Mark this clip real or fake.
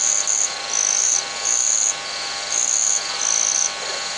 real